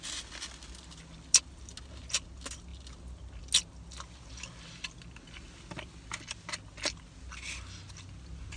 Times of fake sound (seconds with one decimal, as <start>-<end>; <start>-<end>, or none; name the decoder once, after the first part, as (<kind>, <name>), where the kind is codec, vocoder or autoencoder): none